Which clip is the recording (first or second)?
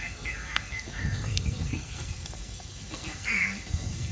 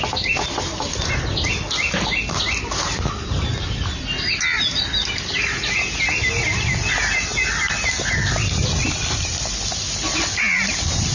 second